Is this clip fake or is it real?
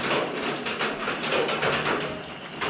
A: real